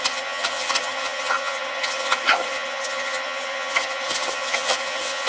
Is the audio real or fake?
fake